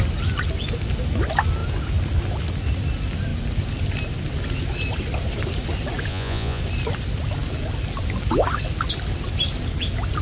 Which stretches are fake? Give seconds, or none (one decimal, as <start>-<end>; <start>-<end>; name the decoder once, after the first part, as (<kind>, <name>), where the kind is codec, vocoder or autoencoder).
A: 6.1-6.6 (vocoder, Vocos)